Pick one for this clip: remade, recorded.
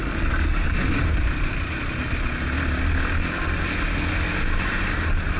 recorded